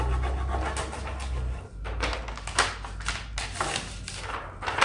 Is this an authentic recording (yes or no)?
yes